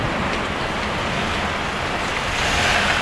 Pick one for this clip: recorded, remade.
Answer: recorded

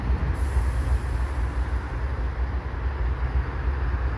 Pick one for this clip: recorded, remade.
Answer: recorded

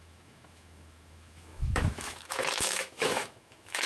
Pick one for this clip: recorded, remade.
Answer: remade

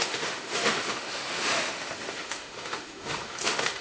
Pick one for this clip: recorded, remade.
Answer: remade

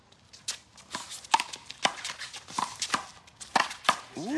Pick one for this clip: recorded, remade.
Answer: recorded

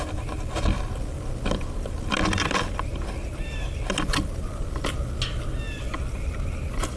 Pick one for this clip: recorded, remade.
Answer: recorded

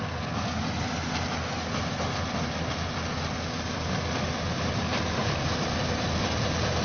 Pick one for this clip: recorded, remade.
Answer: recorded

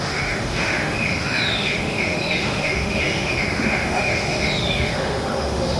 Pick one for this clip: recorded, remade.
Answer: remade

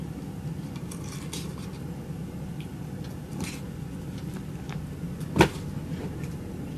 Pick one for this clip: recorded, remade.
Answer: recorded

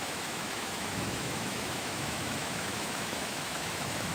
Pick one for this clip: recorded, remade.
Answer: remade